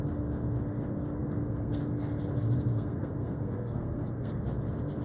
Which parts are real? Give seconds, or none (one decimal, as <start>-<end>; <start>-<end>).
0.0-1.2; 1.8-2.7; 4.4-5.0